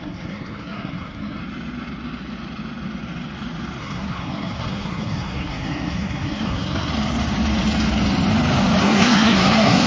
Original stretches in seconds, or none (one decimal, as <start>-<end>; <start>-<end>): 1.4-3.8; 6.9-8.8